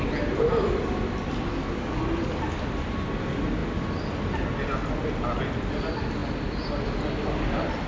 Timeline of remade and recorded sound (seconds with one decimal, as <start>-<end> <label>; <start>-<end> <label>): 0.0-1.5 recorded; 1.5-2.0 remade; 2.0-7.9 recorded